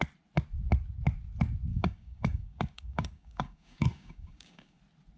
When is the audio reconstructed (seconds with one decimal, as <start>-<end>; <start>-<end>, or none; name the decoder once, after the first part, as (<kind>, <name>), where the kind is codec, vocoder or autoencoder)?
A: 1.7-4.8 (codec, DAC)